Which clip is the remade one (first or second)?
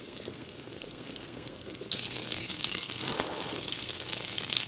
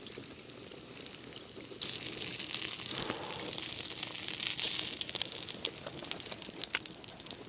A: first